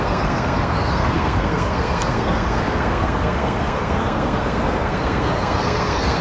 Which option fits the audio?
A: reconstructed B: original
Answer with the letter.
A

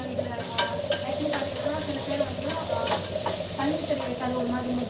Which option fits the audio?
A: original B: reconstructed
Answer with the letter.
A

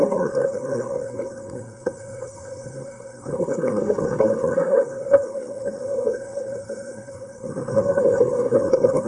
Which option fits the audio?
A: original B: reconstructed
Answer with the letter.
B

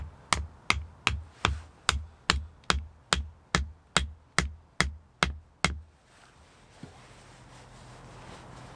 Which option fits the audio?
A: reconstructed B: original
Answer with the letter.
B